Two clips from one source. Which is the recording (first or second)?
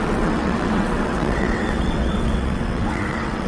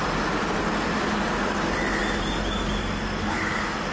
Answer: second